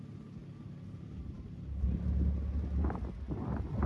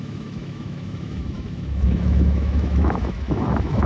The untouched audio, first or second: first